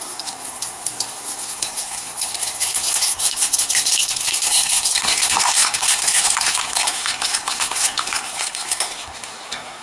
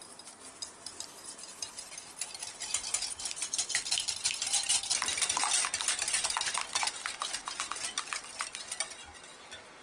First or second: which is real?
second